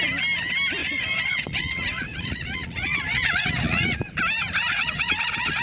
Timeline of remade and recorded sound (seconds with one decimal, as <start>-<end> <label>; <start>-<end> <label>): 0.0-0.8 recorded; 0.8-4.2 remade; 4.2-4.7 recorded; 4.7-5.6 remade

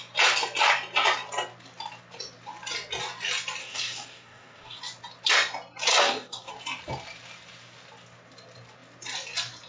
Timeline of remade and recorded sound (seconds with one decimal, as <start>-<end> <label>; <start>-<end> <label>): 0.0-3.6 recorded; 3.6-4.8 remade; 4.8-5.9 recorded; 5.9-6.5 remade; 6.5-9.7 recorded

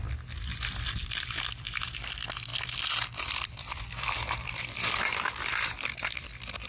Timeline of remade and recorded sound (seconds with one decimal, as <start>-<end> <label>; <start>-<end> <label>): 0.0-6.7 remade

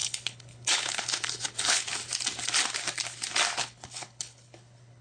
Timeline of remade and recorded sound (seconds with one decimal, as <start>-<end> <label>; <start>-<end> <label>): 0.0-2.0 remade; 2.0-3.6 recorded; 3.6-5.0 remade